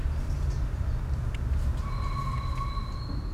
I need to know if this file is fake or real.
real